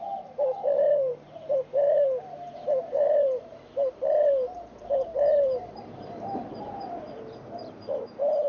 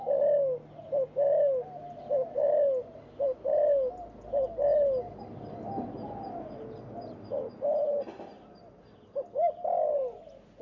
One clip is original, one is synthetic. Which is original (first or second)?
second